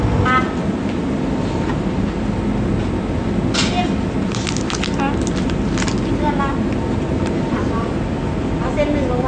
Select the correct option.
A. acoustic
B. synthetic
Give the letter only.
A